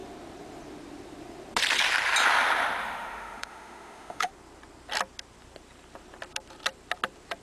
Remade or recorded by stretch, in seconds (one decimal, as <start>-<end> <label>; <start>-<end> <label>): 0.0-2.8 recorded; 2.8-4.3 remade; 4.3-7.4 recorded